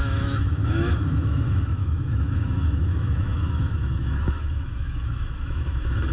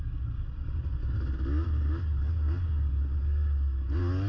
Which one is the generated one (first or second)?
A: first